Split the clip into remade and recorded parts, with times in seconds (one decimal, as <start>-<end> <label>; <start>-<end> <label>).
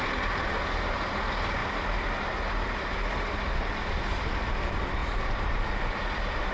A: 0.0-6.5 recorded